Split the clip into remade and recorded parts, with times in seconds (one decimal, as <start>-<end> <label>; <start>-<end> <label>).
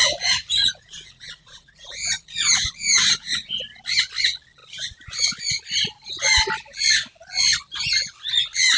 0.0-3.5 remade; 3.5-8.8 recorded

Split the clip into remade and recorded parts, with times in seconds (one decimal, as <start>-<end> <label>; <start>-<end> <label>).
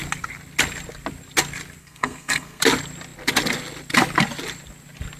0.0-1.8 recorded; 1.8-2.6 remade; 2.6-5.2 recorded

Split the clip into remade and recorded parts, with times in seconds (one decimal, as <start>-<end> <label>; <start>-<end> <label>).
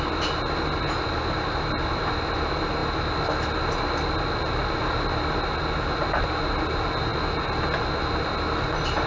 0.0-9.1 recorded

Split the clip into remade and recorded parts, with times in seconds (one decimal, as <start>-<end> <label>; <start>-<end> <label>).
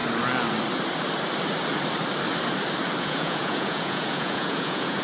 0.0-3.0 recorded; 3.0-5.0 remade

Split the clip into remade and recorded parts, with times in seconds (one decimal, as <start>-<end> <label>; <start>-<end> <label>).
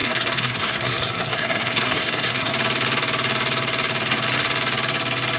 0.0-2.5 remade; 2.5-5.4 recorded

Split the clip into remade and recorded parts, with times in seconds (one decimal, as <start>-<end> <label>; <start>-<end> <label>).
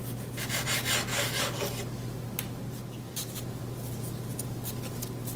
0.0-1.1 recorded; 1.1-1.8 remade; 1.8-5.4 recorded